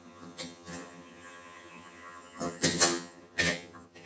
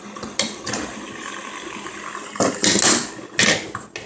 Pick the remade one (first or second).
first